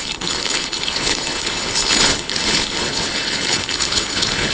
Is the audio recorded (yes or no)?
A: no